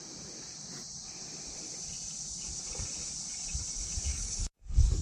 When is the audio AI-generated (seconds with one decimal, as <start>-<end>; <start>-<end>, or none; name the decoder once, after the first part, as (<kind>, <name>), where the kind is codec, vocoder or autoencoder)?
4.1-5.0 (codec, DAC)